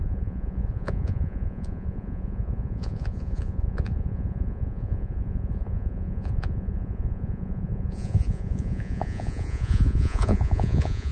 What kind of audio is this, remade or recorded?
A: remade